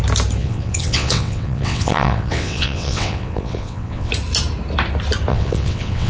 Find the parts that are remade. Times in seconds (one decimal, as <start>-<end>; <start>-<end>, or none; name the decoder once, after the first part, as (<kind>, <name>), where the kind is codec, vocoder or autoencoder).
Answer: 0.4-4.1 (vocoder, WaveNeXt); 5.3-6.1